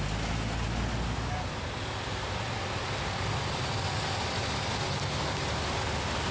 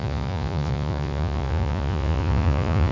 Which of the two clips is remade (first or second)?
second